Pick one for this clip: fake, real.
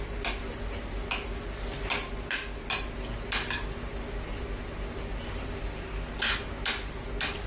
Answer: real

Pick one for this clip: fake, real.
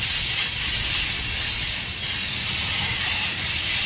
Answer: real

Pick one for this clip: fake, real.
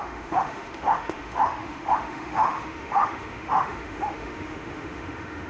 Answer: fake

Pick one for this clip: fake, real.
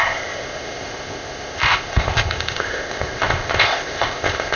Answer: fake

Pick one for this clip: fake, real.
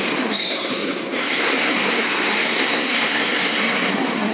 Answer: fake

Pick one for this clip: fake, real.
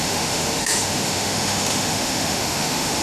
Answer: fake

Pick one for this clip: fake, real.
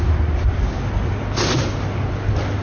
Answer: real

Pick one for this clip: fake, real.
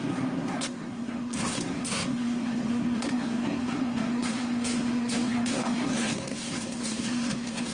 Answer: fake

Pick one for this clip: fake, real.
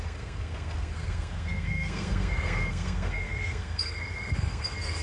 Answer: fake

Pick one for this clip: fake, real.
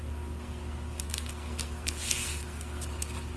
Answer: fake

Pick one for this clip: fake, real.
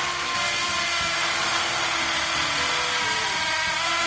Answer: real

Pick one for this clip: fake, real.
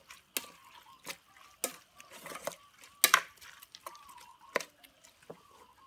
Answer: real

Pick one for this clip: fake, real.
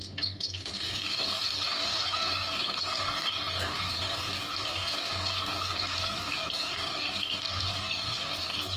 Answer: fake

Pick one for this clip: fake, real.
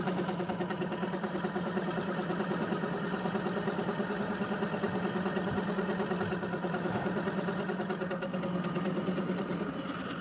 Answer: real